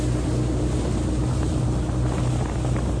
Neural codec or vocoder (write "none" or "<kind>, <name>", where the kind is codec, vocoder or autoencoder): none